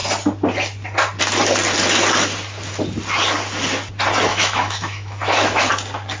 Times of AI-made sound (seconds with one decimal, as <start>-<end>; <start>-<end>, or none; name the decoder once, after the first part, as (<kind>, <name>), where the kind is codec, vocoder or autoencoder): 4.3-5.7 (autoencoder, DAC-VAE)